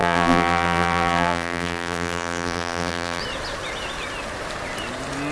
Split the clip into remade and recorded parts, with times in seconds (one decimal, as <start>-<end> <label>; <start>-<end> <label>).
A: 0.0-3.2 remade; 3.2-5.3 recorded